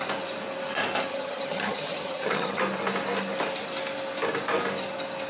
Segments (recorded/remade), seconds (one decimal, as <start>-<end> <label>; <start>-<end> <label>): 0.0-1.1 recorded; 1.1-2.6 remade; 2.6-5.3 recorded